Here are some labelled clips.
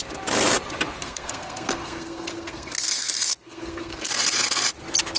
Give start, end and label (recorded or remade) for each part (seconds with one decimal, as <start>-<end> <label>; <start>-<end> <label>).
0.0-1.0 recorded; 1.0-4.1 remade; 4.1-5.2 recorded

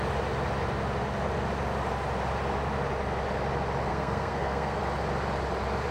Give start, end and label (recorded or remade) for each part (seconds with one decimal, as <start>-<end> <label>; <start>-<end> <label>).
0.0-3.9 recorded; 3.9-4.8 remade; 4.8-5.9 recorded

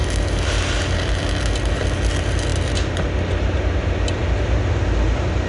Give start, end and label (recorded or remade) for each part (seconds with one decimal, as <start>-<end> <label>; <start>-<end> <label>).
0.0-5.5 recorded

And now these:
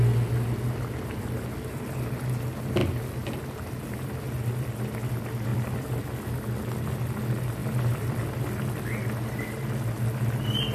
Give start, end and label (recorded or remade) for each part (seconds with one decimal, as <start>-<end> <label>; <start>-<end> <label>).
0.0-2.8 recorded; 2.8-5.1 remade; 5.1-5.5 recorded; 5.5-6.0 remade; 6.0-7.6 recorded; 7.6-8.4 remade; 8.4-10.7 recorded

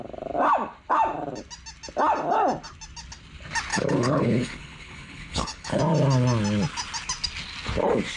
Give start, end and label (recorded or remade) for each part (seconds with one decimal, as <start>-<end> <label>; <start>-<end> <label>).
0.0-3.7 recorded; 3.7-5.8 remade; 5.8-8.2 recorded

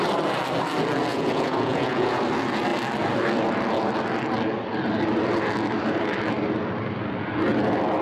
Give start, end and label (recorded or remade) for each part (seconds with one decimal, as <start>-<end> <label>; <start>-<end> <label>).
0.0-1.1 recorded; 1.1-2.2 remade; 2.2-8.0 recorded